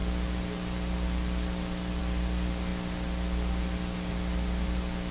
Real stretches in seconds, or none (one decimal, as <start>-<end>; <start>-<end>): 0.0-5.1